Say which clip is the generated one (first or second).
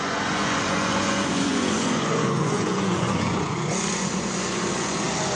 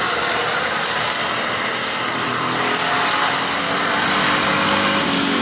first